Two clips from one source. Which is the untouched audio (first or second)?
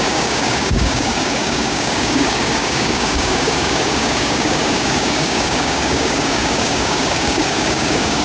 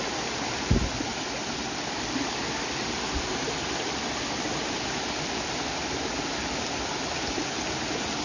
second